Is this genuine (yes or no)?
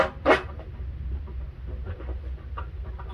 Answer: yes